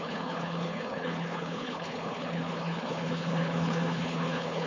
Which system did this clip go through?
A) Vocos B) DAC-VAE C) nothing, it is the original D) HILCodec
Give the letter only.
D